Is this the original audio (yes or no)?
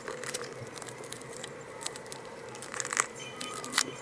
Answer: no